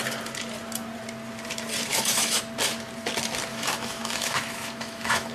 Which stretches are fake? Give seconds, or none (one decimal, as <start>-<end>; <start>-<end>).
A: 1.9-2.4; 3.5-5.3